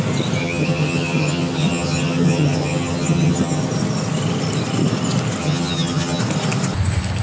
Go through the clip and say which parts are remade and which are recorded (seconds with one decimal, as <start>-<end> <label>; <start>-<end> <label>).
0.0-0.4 recorded; 0.4-3.6 remade; 3.6-5.4 recorded; 5.4-6.2 remade; 6.2-7.2 recorded